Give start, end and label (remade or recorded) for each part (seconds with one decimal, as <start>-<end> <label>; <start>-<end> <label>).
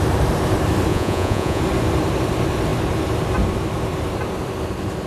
0.0-0.9 recorded; 0.9-1.6 remade; 1.6-5.1 recorded